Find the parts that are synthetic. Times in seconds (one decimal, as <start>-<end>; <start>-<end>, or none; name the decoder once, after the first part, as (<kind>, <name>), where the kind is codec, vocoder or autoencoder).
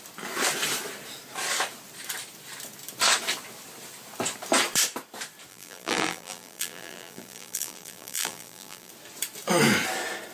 5.5-8.9 (vocoder, BigVGAN v2)